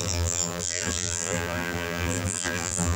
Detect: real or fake fake